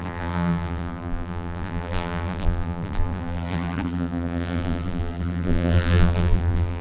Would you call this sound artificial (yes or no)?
yes